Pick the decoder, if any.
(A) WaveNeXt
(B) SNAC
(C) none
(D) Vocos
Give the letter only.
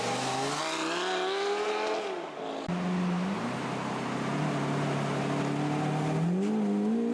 C